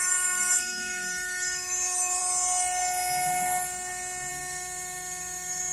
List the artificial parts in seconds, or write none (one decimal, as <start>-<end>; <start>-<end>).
0.0-2.2; 4.3-5.7